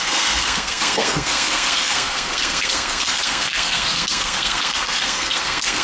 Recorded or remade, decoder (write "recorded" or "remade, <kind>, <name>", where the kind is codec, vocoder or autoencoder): remade, codec, SNAC